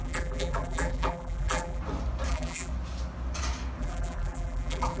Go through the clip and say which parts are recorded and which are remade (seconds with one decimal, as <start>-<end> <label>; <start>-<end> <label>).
0.0-1.8 remade; 1.8-2.3 recorded; 2.3-2.7 remade; 2.7-3.8 recorded; 3.8-5.0 remade